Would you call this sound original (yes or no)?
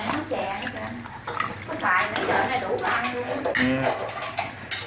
yes